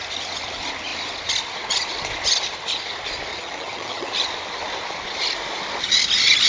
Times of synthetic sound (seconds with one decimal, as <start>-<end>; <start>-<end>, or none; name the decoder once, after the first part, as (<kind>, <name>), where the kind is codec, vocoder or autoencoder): 3.3-4.1 (vocoder, HiFi-GAN)